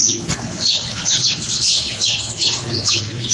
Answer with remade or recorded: remade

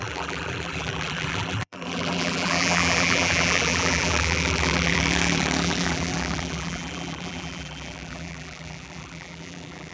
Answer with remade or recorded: remade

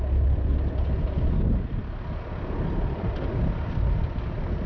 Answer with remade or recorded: recorded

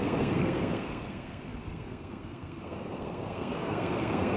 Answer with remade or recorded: remade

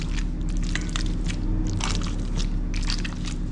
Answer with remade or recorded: recorded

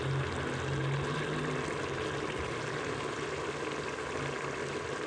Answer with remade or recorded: recorded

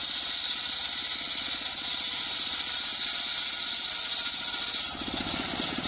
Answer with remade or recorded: recorded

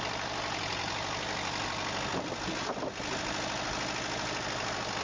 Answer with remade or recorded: recorded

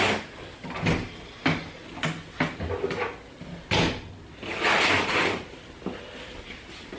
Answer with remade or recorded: recorded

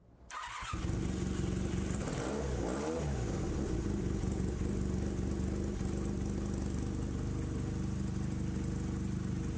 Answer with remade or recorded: recorded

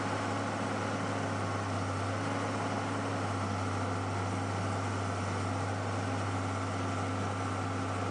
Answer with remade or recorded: recorded